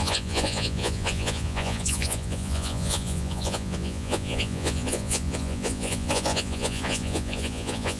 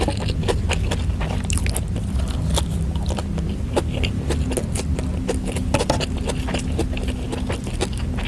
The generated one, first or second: first